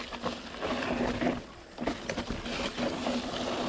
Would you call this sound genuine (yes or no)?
yes